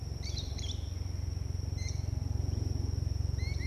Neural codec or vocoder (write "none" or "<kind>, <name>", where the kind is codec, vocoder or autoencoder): none